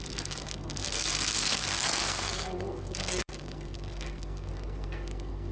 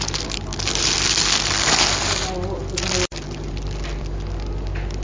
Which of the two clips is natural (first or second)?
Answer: second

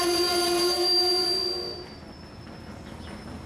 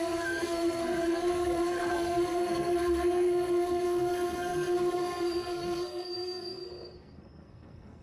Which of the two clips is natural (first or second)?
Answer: first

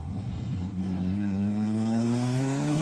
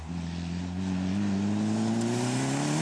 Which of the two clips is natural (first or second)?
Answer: second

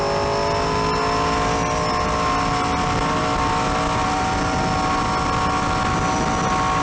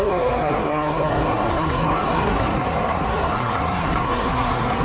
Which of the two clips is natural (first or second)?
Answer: first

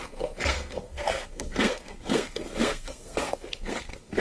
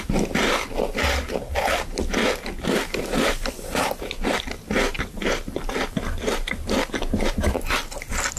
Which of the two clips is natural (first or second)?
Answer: second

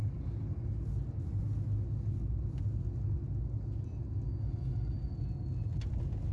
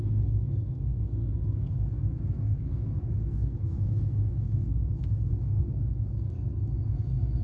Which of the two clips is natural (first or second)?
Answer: first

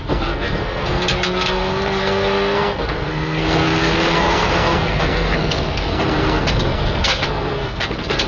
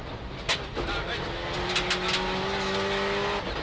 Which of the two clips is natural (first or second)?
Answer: second